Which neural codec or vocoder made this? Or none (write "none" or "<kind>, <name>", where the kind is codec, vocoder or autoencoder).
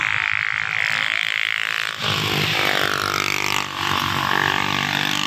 vocoder, BigVGAN v2